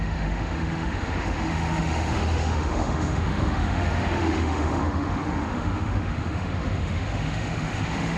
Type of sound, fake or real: fake